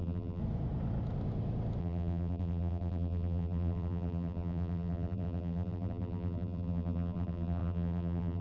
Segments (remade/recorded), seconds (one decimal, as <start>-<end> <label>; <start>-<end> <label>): 0.0-0.4 remade; 0.4-1.8 recorded; 1.8-8.4 remade